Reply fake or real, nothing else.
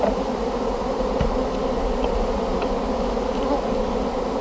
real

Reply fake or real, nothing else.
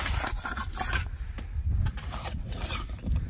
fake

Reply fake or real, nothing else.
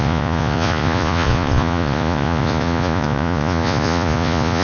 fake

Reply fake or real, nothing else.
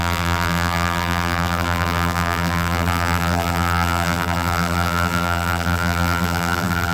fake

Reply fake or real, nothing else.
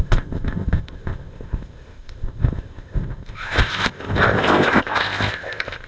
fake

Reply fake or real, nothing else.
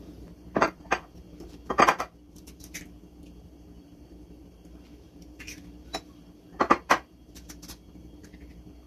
fake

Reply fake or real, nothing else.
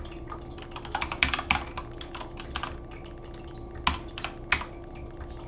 real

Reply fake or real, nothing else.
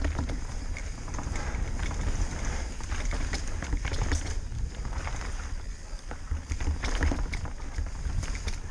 real